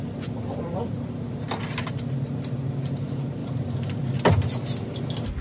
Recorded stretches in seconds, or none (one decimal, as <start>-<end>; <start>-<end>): 0.0-3.4; 4.3-5.4